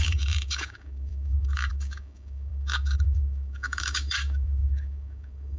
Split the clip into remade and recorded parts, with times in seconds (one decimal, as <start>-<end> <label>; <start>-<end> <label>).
0.0-5.6 remade